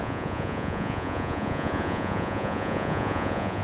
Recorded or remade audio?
remade